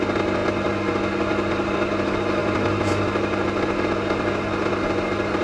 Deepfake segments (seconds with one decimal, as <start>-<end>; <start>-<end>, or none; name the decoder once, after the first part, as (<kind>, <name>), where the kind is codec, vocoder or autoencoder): none